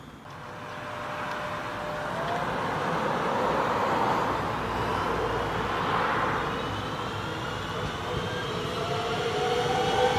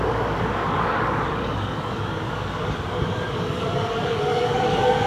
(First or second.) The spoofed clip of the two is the second